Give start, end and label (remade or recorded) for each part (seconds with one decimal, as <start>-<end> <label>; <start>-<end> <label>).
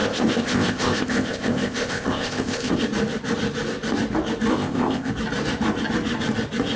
0.0-2.8 remade; 2.8-4.5 recorded; 4.5-5.1 remade; 5.1-6.8 recorded